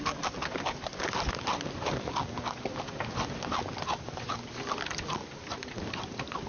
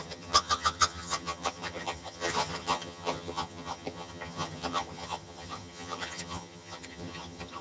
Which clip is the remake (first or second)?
second